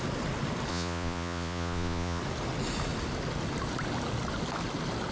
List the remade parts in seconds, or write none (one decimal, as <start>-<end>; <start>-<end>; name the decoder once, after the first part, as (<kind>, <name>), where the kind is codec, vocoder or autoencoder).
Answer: 0.7-2.2 (vocoder, Vocos)